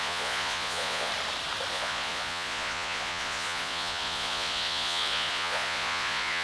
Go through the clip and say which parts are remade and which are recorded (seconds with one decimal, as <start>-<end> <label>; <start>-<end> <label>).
0.0-1.1 remade; 1.1-1.7 recorded; 1.7-6.4 remade